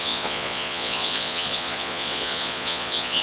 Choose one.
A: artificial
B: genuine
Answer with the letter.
A